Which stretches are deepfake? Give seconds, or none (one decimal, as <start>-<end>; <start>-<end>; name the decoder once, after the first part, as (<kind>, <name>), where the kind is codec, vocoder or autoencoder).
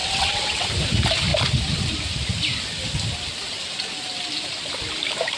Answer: 0.0-0.7 (vocoder, WaveNeXt)